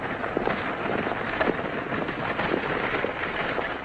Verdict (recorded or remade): recorded